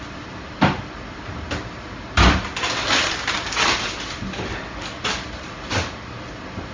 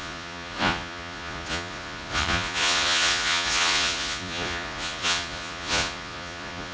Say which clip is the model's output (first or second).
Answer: second